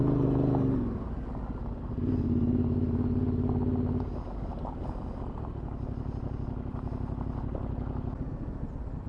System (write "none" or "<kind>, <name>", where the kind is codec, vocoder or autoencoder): none